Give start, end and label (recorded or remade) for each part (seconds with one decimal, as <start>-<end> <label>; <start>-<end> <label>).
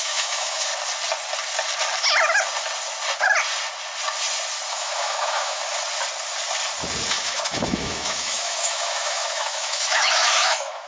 0.0-0.7 remade; 0.7-4.7 recorded; 4.7-5.6 remade; 5.6-7.1 recorded; 7.1-10.9 remade